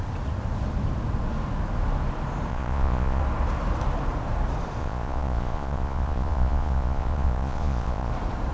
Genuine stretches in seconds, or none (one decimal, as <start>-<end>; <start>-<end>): 0.0-2.5; 3.2-4.8; 8.1-8.5